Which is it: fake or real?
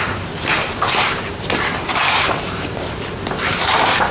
fake